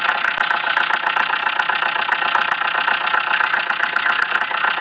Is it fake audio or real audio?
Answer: real